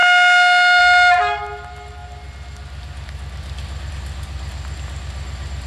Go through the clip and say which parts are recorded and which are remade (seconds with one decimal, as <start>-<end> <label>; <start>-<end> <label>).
0.0-0.8 remade; 0.8-5.7 recorded